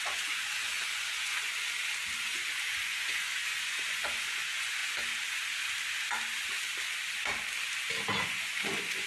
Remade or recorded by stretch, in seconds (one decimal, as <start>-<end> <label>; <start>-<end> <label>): 0.0-1.5 remade; 1.5-2.2 recorded; 2.2-4.8 remade; 4.8-8.2 recorded; 8.2-9.1 remade